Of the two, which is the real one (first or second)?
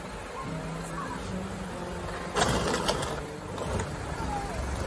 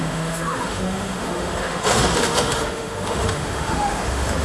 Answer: first